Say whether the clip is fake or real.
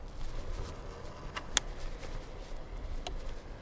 real